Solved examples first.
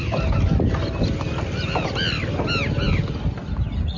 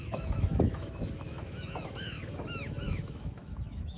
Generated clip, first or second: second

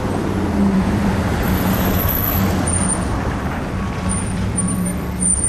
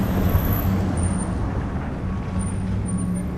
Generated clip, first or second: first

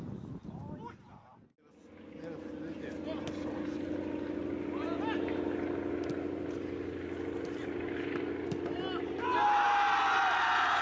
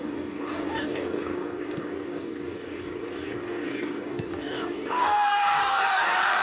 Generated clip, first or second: second